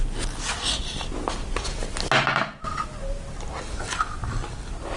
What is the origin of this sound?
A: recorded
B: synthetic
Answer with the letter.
A